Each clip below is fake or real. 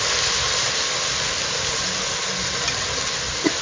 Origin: real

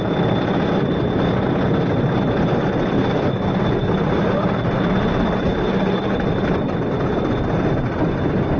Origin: real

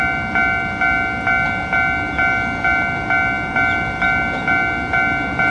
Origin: real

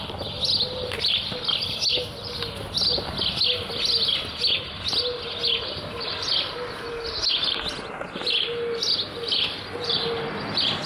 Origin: real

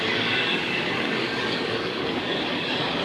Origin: fake